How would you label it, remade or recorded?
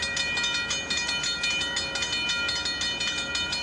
recorded